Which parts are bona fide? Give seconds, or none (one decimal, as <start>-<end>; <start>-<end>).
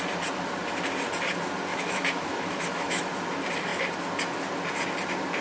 0.0-1.7; 3.1-5.4